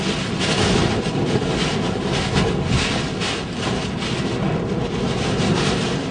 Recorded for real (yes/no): yes